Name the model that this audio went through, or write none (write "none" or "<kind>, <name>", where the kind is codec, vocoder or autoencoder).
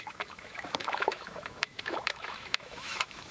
autoencoder, DAC-VAE